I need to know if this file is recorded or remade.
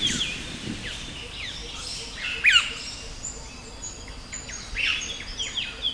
recorded